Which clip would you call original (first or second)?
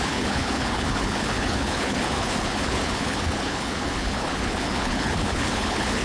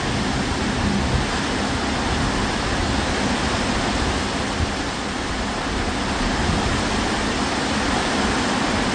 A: second